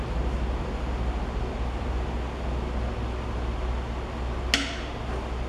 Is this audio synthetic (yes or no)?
no